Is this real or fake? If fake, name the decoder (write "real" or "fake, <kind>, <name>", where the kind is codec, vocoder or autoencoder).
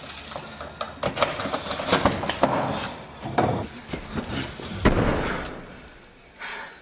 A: real